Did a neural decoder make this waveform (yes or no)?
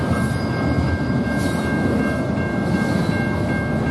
no